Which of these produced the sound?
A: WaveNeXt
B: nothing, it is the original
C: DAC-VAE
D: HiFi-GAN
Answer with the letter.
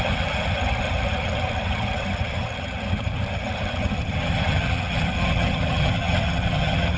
D